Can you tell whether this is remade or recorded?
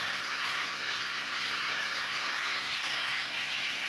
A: remade